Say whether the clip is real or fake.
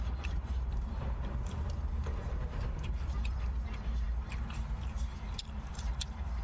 fake